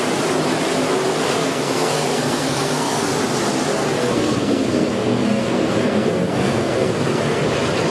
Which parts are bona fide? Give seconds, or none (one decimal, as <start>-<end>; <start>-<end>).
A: 0.0-1.4; 3.1-4.0; 7.4-7.9